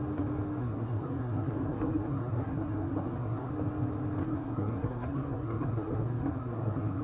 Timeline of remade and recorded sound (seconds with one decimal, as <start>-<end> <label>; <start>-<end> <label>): 0.0-0.6 recorded; 0.6-3.5 remade; 3.5-4.2 recorded; 4.2-7.0 remade